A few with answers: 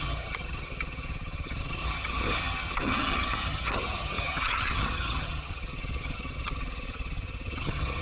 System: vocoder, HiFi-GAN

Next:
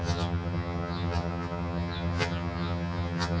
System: vocoder, HiFi-GAN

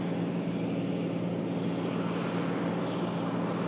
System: none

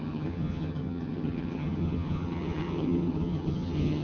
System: vocoder, HiFi-GAN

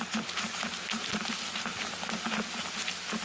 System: none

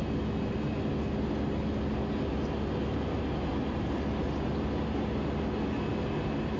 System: none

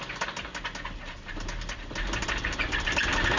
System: none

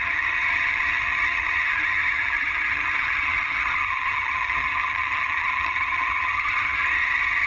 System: vocoder, HiFi-GAN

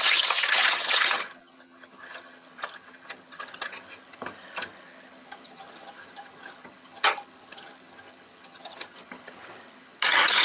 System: vocoder, HiFi-GAN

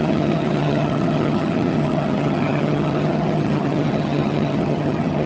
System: vocoder, HiFi-GAN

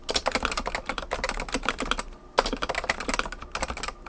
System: none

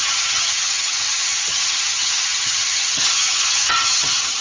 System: vocoder, HiFi-GAN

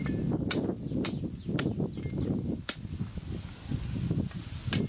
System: none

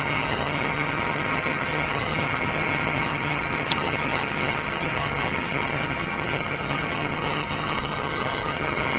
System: vocoder, HiFi-GAN